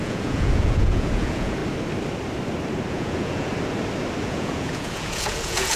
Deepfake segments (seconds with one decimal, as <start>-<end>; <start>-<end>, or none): 0.0-1.6; 2.9-3.5; 4.2-5.8